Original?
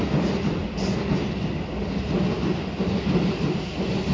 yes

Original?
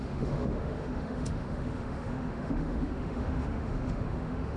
no